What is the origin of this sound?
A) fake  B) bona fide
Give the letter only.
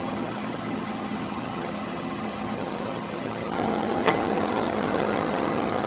A